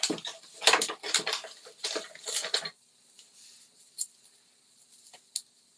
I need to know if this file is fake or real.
real